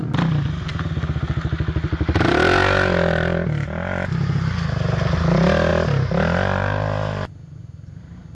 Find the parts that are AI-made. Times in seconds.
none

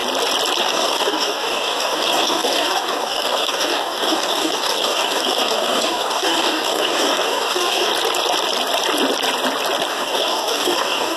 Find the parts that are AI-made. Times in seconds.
0.6-7.9 (codec, DAC); 9.9-11.2

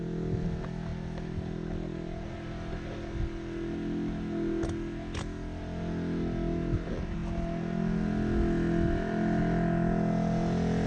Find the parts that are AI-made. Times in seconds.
none

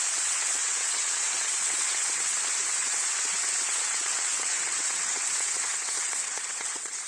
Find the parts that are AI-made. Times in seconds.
0.0-7.1 (vocoder, WaveNeXt)

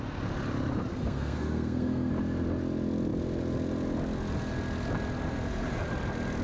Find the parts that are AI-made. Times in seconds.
0.9-2.1 (codec, SNAC)

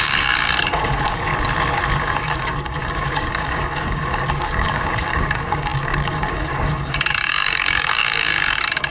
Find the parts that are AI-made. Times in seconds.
0.0-1.3 (codec, DAC); 2.0-8.9